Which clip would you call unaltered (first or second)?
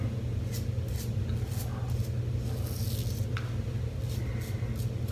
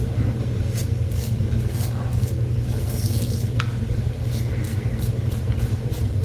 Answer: first